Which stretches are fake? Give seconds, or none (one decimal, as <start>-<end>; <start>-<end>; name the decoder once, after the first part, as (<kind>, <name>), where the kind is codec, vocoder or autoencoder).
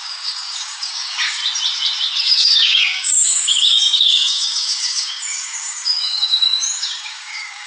0.0-1.4 (codec, DAC); 2.2-7.7